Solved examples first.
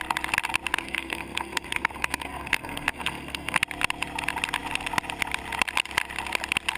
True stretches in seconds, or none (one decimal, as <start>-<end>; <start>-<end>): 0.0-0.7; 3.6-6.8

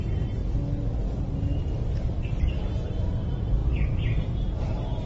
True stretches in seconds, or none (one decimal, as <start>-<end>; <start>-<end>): 0.4-2.5

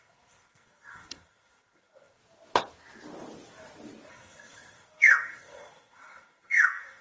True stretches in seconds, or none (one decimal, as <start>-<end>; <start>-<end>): 2.2-4.1

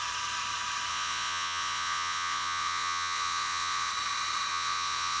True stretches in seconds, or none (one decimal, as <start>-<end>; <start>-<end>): 0.0-0.9; 3.9-4.5